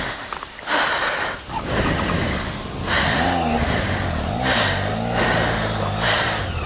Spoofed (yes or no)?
no